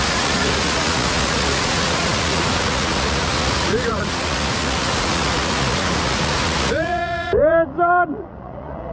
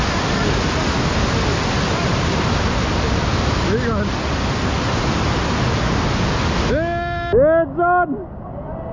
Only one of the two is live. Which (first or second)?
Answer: second